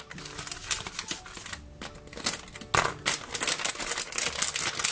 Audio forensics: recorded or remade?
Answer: recorded